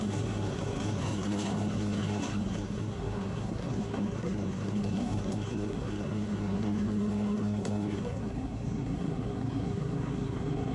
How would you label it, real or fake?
fake